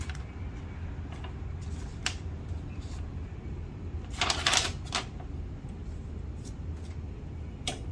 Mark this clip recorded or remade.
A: recorded